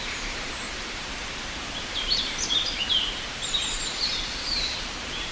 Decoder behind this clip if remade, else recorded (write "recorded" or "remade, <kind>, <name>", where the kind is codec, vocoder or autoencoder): remade, vocoder, BigVGAN v2